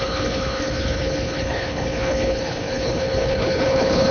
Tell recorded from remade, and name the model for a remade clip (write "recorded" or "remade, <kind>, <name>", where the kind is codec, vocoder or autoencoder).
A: remade, codec, HILCodec